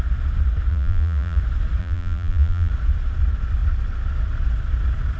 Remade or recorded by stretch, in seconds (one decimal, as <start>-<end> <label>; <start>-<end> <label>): 0.0-0.7 recorded; 0.7-1.4 remade; 1.4-1.8 recorded; 1.8-2.7 remade; 2.7-5.2 recorded